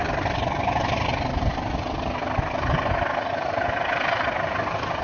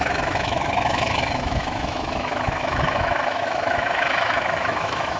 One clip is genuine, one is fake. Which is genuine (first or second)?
first